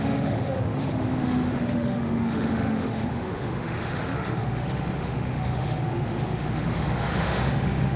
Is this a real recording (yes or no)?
no